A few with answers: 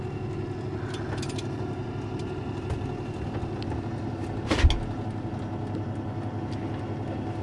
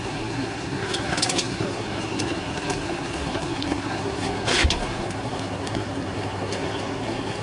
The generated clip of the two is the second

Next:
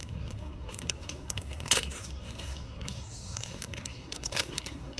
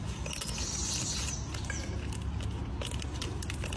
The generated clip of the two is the first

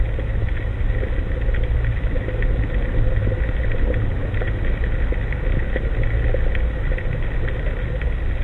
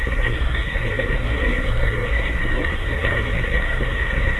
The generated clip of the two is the second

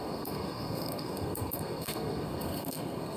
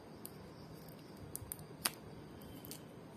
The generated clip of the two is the first